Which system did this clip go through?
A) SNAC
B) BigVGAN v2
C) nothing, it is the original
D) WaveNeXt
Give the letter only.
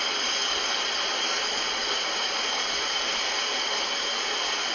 B